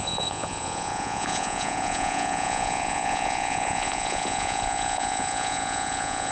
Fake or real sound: fake